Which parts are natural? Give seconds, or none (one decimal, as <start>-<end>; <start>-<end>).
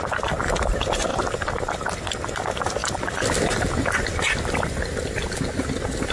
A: 0.0-6.1